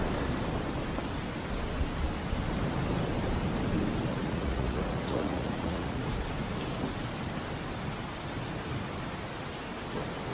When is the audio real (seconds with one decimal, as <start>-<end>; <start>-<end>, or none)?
0.0-4.1; 6.0-10.3

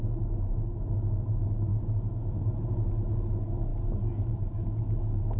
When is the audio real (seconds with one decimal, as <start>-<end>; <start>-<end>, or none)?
0.0-5.4

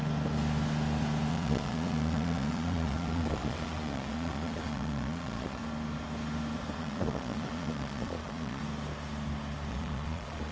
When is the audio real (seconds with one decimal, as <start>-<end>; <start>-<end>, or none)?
0.0-1.3; 5.6-6.8; 8.6-9.7